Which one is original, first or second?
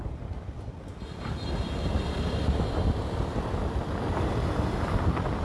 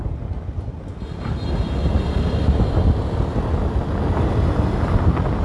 second